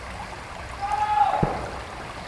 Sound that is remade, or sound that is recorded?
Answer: recorded